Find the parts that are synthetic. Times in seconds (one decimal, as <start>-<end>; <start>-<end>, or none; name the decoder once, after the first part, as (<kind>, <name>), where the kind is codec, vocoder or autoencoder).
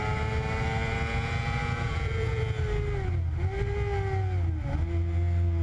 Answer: 1.6-2.4 (vocoder, Vocos)